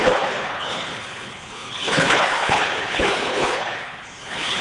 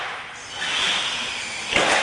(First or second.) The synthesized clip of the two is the first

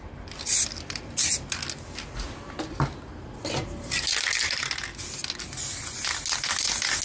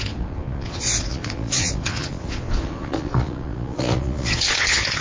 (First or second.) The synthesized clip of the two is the second